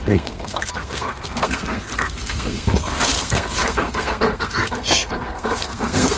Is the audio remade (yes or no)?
yes